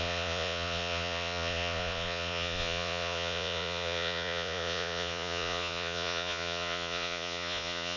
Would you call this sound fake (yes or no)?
yes